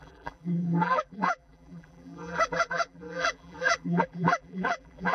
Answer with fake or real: fake